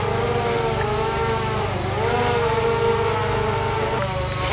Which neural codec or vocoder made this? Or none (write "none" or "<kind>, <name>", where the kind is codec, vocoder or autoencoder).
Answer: none